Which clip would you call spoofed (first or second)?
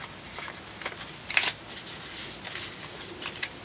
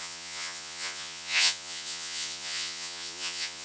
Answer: second